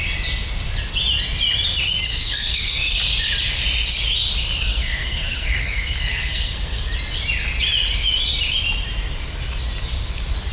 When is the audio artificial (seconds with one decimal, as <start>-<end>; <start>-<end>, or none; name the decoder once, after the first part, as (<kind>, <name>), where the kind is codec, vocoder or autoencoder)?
2.1-2.9 (codec, SNAC); 4.7-6.8